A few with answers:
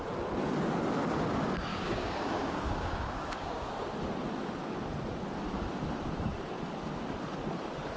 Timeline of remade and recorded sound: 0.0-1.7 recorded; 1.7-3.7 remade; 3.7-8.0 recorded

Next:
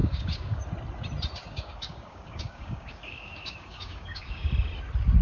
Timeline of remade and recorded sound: 0.0-0.6 remade; 0.6-1.4 recorded; 1.4-4.5 remade; 4.5-5.2 recorded

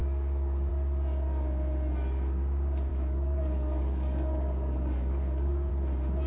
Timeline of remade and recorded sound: 0.0-0.7 remade; 0.7-2.9 recorded; 2.9-5.7 remade; 5.7-6.3 recorded

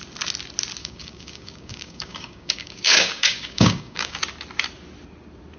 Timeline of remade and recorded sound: 0.0-0.8 recorded; 0.8-4.2 remade; 4.2-5.6 recorded

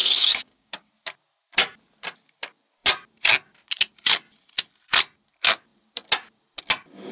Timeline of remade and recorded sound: 0.0-0.9 remade; 0.9-7.1 recorded

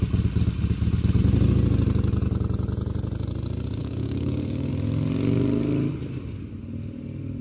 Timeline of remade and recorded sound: 0.0-3.8 recorded; 3.8-4.7 remade; 4.7-7.4 recorded